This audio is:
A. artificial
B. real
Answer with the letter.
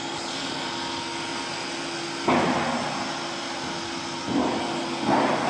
B